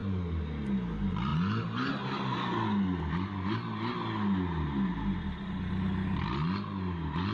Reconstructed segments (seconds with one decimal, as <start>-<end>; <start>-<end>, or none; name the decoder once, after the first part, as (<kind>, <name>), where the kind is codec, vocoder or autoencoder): none

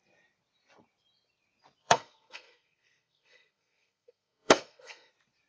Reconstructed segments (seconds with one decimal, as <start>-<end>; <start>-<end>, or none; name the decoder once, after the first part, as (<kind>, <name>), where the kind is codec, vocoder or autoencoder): 1.8-5.1 (codec, SNAC)

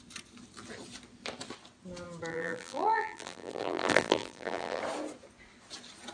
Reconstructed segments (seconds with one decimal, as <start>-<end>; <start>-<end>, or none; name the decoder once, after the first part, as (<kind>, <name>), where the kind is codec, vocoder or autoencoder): 2.3-4.8 (vocoder, BigVGAN v2)

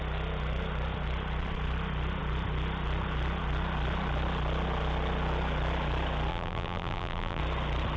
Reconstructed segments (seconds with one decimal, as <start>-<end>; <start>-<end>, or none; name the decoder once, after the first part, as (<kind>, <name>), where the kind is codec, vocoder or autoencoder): 6.3-7.4 (vocoder, BigVGAN v2)

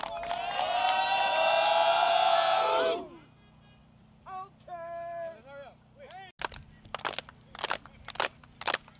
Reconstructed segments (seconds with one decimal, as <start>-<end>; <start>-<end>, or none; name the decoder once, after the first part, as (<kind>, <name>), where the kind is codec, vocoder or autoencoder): none